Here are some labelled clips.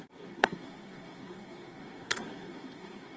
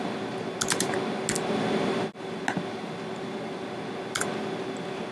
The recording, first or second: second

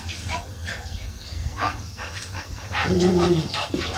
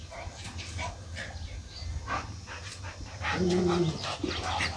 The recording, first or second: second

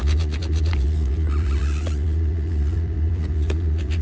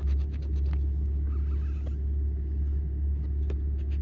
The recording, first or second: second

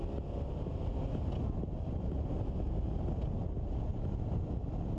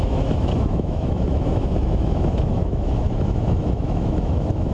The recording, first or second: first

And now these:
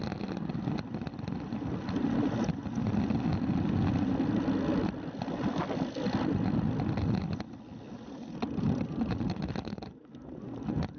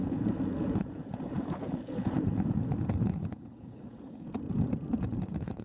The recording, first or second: first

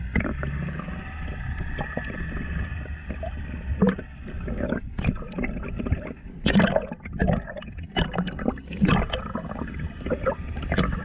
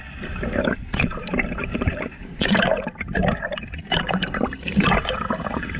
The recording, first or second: first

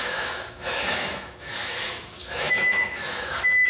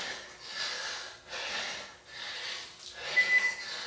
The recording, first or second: second